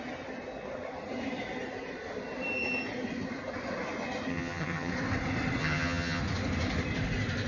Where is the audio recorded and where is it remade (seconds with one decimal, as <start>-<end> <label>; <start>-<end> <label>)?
0.0-4.3 recorded; 4.3-4.9 remade; 4.9-5.6 recorded; 5.6-6.2 remade; 6.2-7.5 recorded